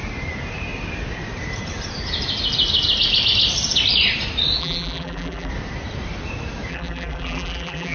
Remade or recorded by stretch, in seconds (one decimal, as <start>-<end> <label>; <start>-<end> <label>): 0.0-4.6 recorded; 4.6-5.5 remade; 5.5-6.7 recorded; 6.7-7.9 remade